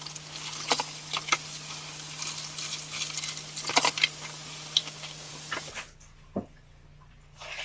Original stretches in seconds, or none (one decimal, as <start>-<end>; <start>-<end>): 0.0-4.8; 5.3-7.6